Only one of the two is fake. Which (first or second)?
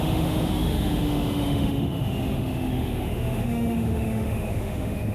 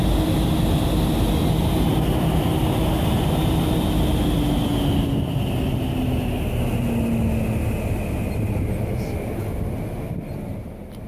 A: first